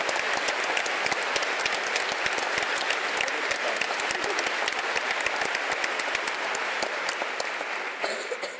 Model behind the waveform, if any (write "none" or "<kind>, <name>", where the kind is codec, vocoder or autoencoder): none